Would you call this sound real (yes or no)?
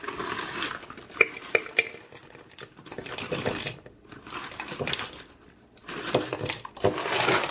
yes